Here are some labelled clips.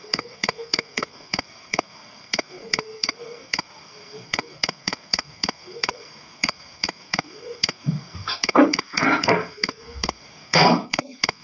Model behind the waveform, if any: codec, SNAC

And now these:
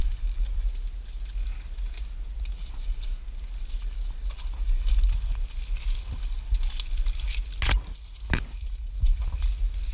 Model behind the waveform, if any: none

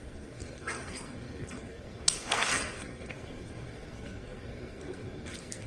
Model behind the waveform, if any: codec, SNAC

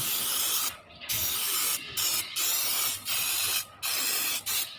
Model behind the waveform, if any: none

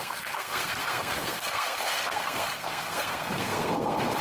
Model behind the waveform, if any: codec, SNAC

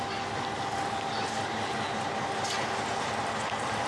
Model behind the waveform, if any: none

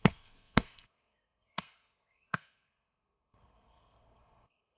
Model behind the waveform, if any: codec, SNAC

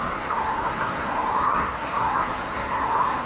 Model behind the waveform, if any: codec, SNAC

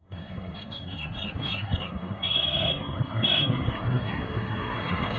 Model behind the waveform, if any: codec, SNAC